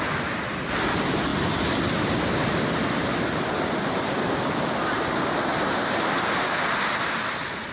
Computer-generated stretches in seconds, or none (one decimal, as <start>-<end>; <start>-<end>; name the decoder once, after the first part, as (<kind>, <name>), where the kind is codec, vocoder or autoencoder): none